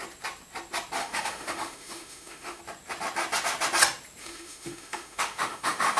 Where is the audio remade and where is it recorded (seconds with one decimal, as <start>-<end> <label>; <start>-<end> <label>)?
0.0-1.0 recorded; 1.0-2.6 remade; 2.6-4.2 recorded; 4.2-6.0 remade